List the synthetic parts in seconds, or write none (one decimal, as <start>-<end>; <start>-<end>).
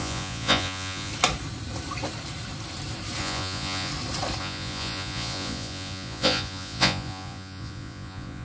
0.0-1.1; 3.2-3.9; 4.4-8.4